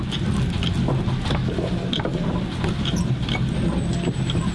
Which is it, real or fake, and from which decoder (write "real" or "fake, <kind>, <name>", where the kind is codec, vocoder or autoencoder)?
real